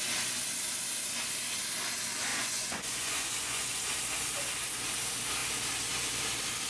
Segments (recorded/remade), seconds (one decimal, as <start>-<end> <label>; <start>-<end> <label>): 0.0-2.3 recorded; 2.3-3.9 remade; 3.9-6.7 recorded